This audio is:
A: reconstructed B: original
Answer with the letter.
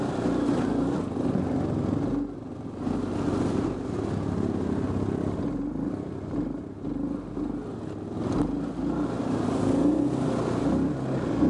B